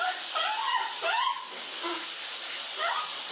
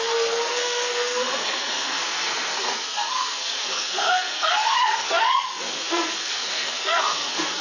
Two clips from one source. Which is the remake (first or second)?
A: second